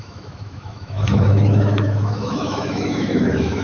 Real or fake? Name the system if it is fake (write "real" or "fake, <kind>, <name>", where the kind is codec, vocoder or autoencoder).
fake, autoencoder, DAC-VAE